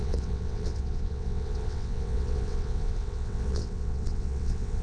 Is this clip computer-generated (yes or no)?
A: yes